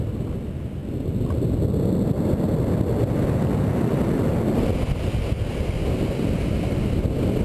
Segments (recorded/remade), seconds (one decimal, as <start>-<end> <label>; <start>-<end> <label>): 0.0-7.4 recorded